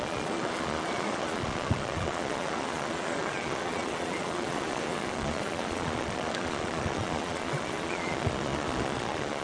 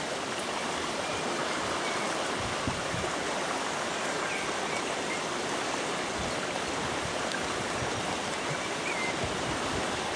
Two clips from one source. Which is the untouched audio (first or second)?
second